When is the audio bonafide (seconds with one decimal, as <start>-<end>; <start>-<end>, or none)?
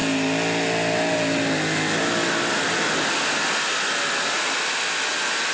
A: 0.0-5.5